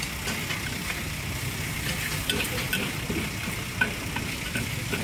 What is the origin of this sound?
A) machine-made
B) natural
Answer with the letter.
B